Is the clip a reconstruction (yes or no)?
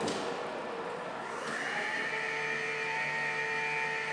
no